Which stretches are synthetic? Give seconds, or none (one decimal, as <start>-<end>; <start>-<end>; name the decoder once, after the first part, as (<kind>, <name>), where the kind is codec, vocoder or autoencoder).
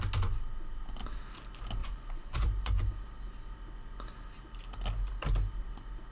1.8-2.9 (vocoder, Vocos)